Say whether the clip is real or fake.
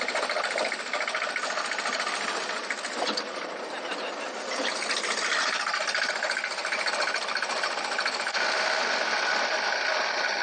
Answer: real